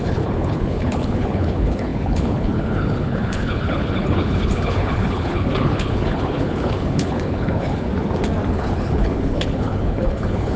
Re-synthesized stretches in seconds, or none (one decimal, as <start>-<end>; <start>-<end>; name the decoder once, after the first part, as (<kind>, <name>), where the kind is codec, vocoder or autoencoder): 0.0-7.9 (codec, HILCodec); 8.5-10.6